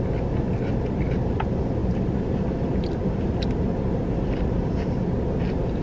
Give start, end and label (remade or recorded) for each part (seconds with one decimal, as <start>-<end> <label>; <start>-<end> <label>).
0.0-1.8 recorded; 1.8-5.3 remade; 5.3-5.8 recorded